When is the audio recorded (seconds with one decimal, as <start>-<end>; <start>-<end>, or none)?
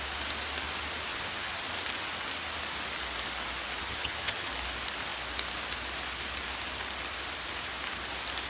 0.0-1.1; 1.6-3.8; 4.5-8.5